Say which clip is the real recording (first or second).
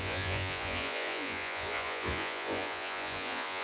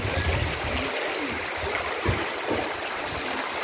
second